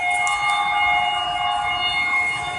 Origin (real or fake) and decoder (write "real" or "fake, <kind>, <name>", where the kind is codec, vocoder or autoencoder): real